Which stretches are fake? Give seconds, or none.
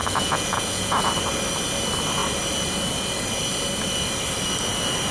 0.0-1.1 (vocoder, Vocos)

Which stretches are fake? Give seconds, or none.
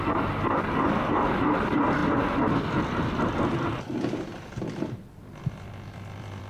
4.3-6.5 (vocoder, BigVGAN v2)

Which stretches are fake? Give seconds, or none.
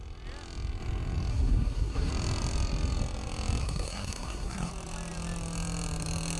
1.3-2.1 (codec, SNAC); 3.6-4.7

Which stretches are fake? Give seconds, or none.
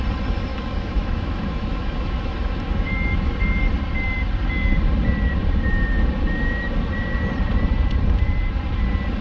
0.5-3.3 (autoencoder, DAC-VAE)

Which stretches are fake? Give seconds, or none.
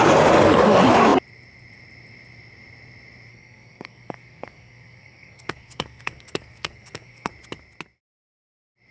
3.3-7.3 (codec, SNAC)